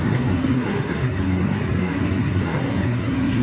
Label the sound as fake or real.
fake